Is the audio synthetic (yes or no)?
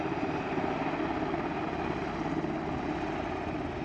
no